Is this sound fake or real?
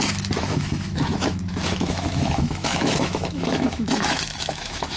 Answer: fake